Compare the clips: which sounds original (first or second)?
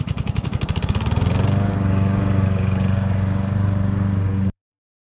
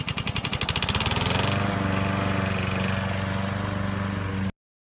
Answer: second